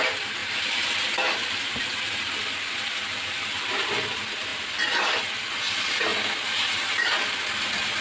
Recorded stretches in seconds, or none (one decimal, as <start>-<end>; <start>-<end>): 0.0-0.4; 3.9-8.0